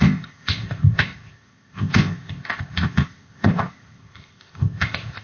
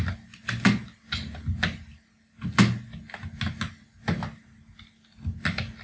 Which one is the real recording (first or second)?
second